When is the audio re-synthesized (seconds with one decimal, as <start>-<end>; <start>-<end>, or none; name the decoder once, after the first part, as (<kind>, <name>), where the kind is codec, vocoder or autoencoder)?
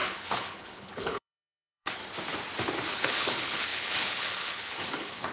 0.0-2.0 (codec, HILCodec); 2.9-5.3